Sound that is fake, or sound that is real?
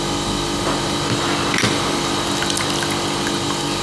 real